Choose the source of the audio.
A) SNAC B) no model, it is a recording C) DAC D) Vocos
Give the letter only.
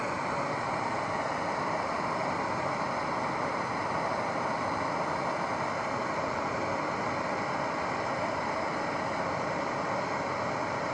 B